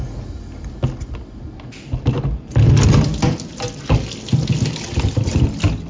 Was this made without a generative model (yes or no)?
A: yes